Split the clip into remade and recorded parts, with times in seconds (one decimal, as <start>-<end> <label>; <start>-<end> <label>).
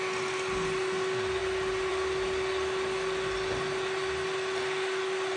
0.0-5.4 recorded